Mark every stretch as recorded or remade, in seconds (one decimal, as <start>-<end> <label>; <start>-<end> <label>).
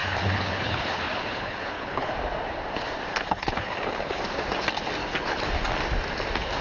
0.0-2.1 remade; 2.1-3.1 recorded; 3.1-4.2 remade; 4.2-5.0 recorded; 5.0-5.5 remade; 5.5-6.6 recorded